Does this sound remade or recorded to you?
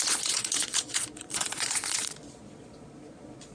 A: remade